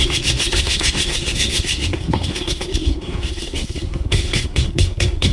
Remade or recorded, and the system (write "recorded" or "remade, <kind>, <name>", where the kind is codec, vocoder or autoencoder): remade, codec, SNAC